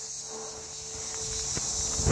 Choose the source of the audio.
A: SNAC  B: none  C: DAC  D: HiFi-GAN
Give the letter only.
B